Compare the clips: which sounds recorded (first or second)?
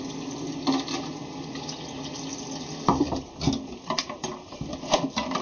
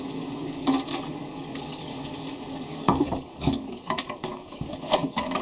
first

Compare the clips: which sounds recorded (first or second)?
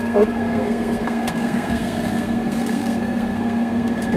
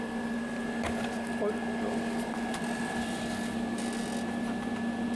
second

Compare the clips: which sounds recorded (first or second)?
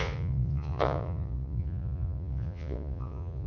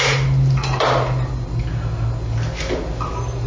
second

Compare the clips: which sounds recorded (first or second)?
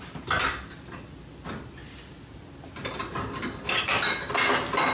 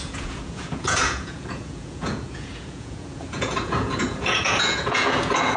first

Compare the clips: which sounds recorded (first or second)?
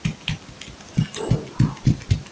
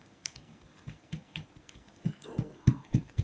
first